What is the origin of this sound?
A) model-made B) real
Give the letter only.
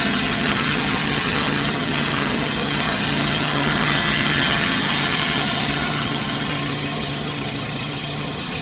A